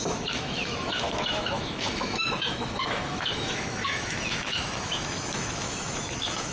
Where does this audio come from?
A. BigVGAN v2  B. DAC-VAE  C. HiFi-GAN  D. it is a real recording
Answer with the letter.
B